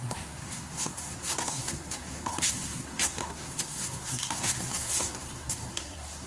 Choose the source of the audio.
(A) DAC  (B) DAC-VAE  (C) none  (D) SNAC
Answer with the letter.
D